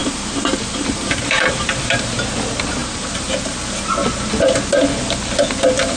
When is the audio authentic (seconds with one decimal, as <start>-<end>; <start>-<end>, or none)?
2.1-2.8; 3.4-6.0